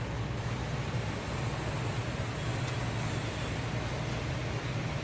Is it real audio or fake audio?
real